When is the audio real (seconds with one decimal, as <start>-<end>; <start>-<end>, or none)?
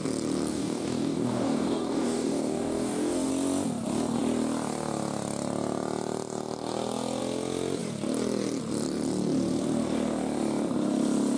0.0-0.5; 3.3-11.4